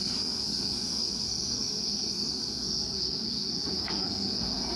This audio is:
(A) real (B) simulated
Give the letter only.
B